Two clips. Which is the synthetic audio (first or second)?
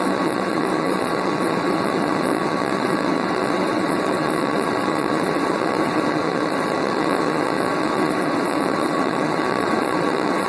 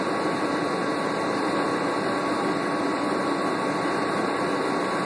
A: first